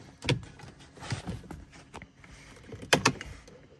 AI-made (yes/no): no